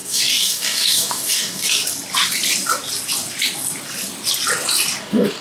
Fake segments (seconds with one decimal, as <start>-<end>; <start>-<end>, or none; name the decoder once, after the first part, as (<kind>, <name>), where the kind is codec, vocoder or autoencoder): 0.0-1.8 (codec, DAC); 5.0-5.4